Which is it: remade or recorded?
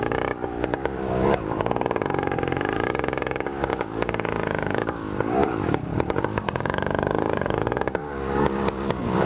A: remade